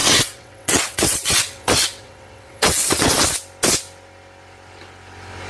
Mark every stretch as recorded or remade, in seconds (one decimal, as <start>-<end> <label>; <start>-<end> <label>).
0.0-3.1 remade; 3.1-5.5 recorded